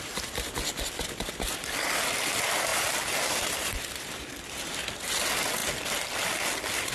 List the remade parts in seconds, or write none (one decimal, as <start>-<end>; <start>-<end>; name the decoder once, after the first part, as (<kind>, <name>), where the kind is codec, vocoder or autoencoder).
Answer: none